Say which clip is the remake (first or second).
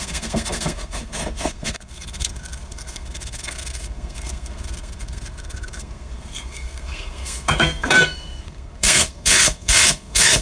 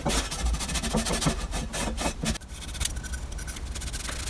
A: first